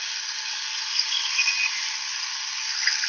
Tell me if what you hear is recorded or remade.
recorded